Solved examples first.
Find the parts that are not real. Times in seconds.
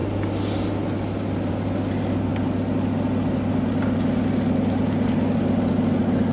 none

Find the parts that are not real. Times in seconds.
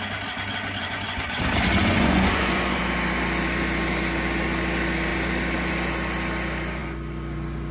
0.8-1.4; 1.8-2.8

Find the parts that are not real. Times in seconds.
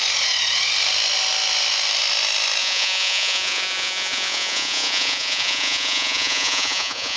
2.6-7.2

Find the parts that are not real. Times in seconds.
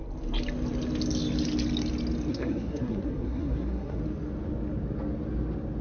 2.3-4.0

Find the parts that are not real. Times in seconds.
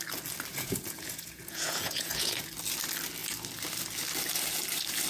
0.5-2.4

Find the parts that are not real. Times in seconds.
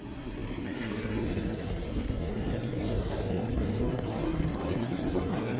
0.0-5.6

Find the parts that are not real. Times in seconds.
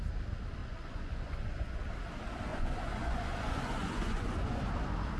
0.6-1.8; 2.5-4.6